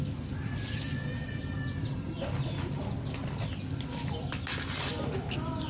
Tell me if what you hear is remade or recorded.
recorded